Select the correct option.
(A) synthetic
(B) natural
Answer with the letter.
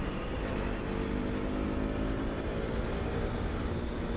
B